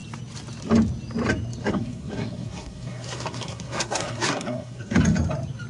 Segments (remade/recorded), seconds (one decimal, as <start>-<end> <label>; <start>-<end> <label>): 0.0-1.6 recorded; 1.6-5.0 remade; 5.0-5.7 recorded